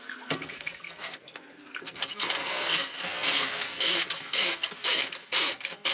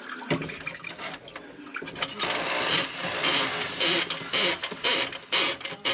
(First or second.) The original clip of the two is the second